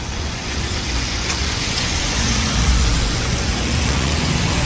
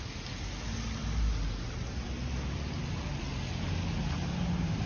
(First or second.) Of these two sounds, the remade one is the first